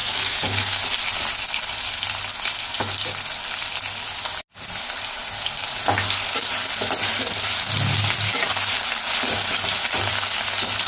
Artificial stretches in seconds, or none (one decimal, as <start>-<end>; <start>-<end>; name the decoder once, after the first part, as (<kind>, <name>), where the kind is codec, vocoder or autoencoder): 0.0-0.8 (codec, DAC)